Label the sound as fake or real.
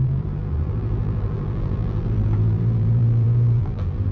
fake